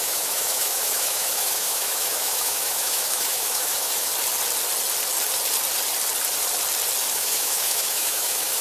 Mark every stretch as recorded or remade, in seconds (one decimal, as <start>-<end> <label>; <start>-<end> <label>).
0.0-4.1 remade; 4.1-7.1 recorded; 7.1-8.6 remade